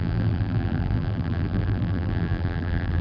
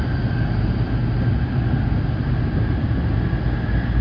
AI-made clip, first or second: first